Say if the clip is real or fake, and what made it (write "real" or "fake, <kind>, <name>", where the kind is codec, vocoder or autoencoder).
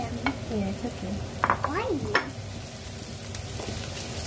real